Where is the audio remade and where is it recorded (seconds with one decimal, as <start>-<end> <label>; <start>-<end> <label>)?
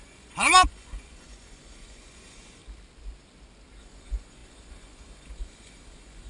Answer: 0.0-2.6 remade; 2.6-3.8 recorded; 3.8-6.3 remade